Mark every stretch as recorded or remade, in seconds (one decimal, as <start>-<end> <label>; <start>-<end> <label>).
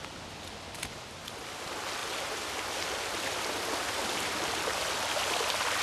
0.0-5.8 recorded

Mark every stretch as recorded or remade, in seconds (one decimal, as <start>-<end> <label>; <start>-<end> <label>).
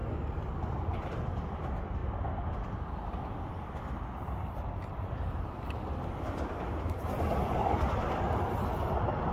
0.0-0.6 recorded; 0.6-2.0 remade; 2.0-7.2 recorded; 7.2-9.3 remade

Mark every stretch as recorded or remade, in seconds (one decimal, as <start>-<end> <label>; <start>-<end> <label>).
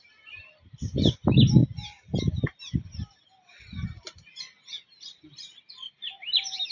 0.0-6.7 recorded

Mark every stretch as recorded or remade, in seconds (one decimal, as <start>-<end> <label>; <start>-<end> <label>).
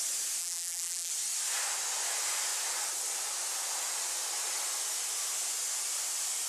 0.0-0.4 recorded; 0.4-1.1 remade; 1.1-6.5 recorded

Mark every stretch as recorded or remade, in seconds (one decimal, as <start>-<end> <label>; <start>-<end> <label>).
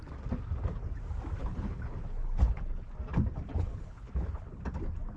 0.0-1.4 recorded; 1.4-2.9 remade; 2.9-3.5 recorded; 3.5-4.6 remade; 4.6-5.2 recorded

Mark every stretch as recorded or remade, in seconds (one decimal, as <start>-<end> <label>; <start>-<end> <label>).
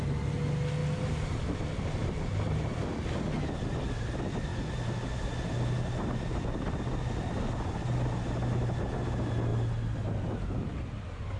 0.0-11.4 recorded